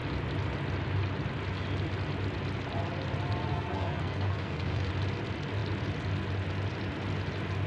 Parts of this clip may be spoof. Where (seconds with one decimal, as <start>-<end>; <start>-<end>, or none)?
3.5-4.9